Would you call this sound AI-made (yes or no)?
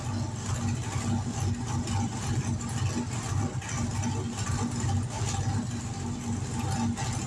no